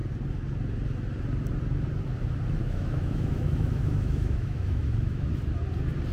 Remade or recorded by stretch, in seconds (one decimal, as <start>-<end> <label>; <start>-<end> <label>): 0.0-2.6 recorded; 2.6-5.3 remade; 5.3-6.1 recorded